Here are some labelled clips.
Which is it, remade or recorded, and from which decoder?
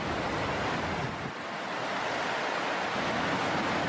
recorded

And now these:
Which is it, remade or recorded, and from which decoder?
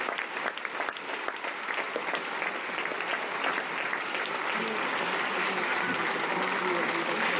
recorded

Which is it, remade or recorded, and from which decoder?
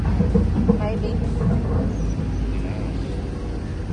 recorded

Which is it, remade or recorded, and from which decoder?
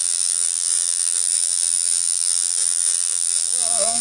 remade, vocoder, BigVGAN v2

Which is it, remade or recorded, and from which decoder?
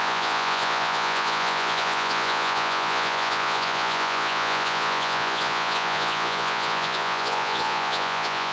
remade, vocoder, Vocos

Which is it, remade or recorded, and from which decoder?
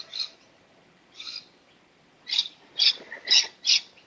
recorded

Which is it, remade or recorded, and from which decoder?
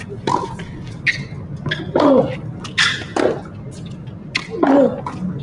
recorded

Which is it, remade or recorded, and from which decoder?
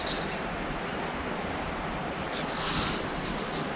recorded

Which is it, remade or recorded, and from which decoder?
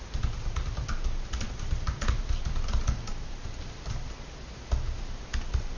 recorded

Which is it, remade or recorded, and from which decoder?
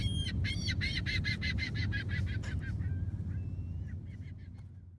recorded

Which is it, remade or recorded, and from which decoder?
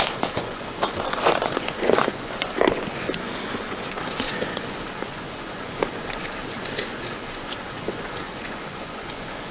remade, vocoder, Vocos